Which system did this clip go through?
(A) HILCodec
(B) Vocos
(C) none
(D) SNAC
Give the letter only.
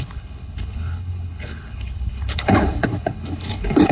A